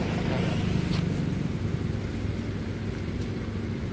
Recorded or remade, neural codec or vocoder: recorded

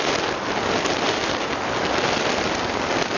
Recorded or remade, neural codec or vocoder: recorded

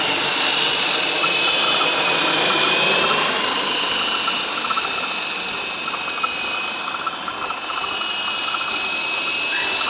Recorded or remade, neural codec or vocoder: recorded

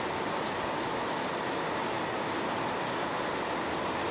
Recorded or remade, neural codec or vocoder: recorded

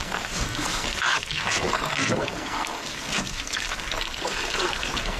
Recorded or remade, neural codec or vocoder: remade, codec, SNAC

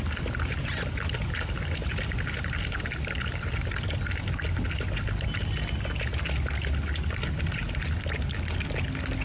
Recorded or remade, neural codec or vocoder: recorded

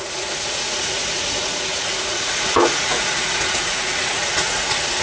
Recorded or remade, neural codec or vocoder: remade, vocoder, Vocos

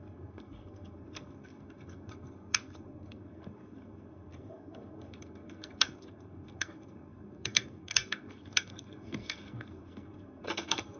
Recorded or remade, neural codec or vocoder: remade, codec, SNAC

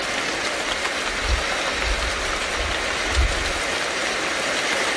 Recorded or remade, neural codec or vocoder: recorded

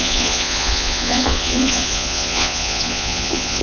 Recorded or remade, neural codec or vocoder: remade, vocoder, Vocos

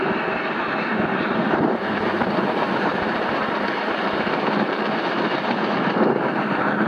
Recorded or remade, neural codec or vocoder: remade, vocoder, BigVGAN v2